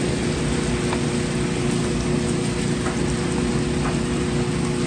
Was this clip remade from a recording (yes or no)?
no